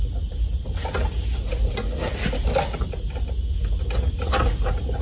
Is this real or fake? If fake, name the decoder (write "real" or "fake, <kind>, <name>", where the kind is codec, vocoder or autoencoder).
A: real